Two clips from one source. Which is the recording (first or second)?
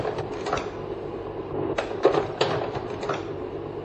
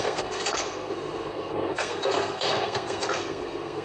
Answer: first